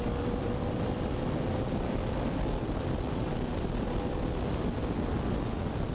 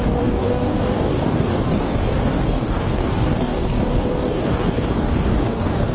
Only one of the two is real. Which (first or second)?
first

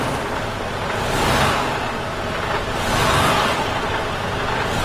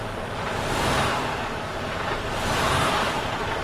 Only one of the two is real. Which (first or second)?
first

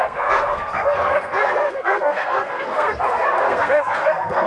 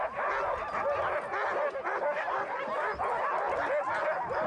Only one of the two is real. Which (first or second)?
second